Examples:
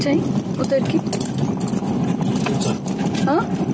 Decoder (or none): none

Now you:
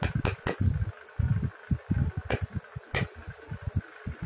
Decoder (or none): none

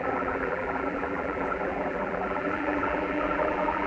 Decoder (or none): vocoder, BigVGAN v2